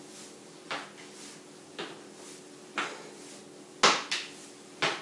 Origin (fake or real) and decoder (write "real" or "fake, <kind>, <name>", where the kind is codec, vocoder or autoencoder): real